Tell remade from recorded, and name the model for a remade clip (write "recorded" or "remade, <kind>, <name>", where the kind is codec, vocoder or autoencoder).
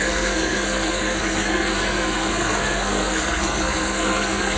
remade, codec, SNAC